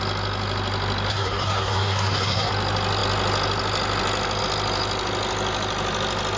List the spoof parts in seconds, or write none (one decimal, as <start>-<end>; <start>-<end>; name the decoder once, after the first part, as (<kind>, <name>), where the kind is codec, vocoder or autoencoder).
1.1-2.5 (codec, SNAC)